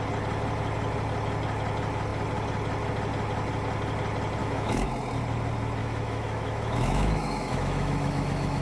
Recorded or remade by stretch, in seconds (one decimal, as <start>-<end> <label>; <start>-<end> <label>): 0.0-4.4 recorded; 4.4-4.9 remade; 4.9-5.8 recorded; 5.8-8.6 remade